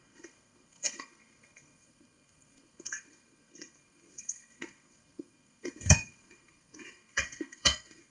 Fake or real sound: fake